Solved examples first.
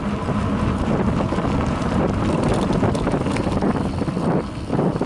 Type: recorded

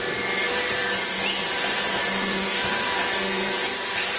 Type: remade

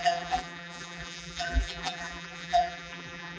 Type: remade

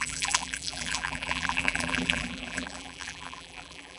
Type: remade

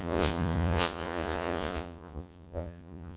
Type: remade